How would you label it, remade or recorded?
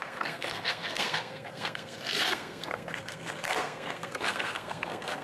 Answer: remade